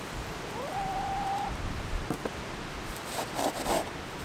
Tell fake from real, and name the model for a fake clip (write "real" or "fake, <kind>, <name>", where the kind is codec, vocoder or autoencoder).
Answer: real